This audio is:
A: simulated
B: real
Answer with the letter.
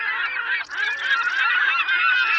B